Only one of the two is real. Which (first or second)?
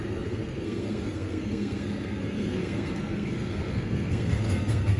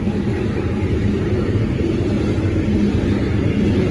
second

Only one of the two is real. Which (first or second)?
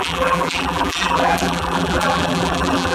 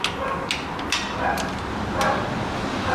second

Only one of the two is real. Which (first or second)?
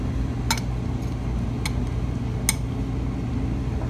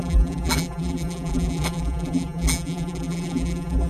first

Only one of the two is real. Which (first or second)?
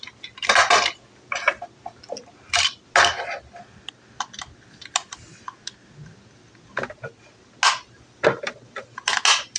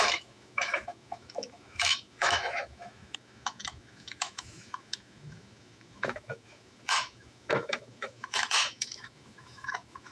first